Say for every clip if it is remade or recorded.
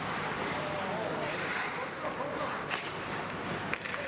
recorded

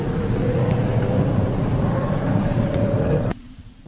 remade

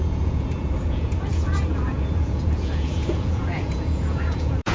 remade